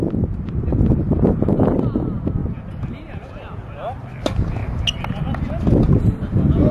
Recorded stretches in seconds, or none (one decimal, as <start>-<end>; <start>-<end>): 0.0-6.7